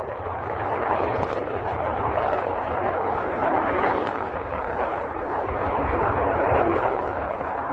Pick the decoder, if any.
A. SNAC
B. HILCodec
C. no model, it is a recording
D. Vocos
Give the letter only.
B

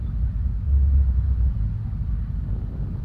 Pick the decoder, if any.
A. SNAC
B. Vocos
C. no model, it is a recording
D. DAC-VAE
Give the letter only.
C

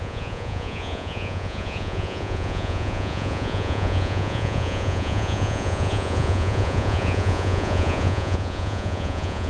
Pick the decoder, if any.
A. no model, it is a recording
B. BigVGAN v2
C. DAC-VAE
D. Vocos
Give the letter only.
D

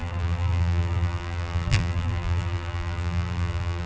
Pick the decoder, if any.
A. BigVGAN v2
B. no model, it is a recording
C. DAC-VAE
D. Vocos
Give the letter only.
A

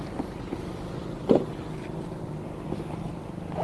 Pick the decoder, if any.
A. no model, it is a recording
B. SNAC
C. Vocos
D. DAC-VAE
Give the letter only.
A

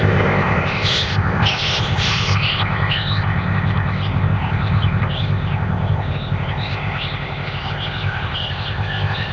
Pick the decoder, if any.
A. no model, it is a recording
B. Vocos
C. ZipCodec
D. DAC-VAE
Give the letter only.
C